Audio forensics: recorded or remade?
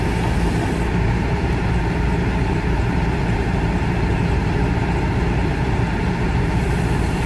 remade